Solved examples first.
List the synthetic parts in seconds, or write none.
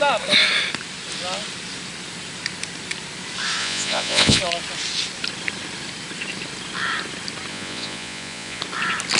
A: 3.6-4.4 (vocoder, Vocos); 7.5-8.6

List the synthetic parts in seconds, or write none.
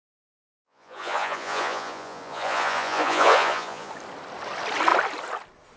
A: 0.4-3.9 (vocoder, Vocos)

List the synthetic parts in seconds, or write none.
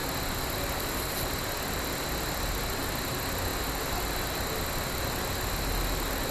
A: none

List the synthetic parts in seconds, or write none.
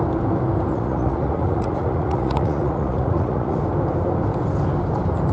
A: 0.7-3.6 (vocoder, Vocos)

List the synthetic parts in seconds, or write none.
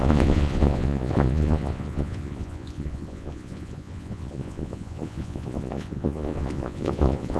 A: 0.0-7.4 (vocoder, Vocos)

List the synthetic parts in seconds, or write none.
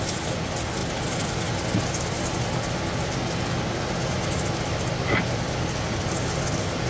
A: none